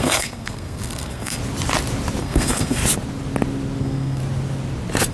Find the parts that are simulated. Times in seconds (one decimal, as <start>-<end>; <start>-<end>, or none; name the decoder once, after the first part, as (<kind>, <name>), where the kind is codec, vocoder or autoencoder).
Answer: 0.0-1.4 (codec, SNAC); 2.2-2.8; 3.8-4.2